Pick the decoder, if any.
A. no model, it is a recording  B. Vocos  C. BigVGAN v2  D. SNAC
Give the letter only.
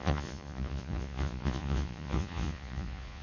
B